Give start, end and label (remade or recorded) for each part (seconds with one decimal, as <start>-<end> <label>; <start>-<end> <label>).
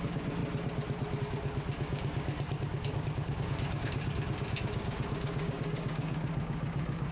0.0-0.4 remade; 0.4-1.2 recorded; 1.2-7.1 remade